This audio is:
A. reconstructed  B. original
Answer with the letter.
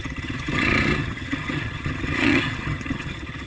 A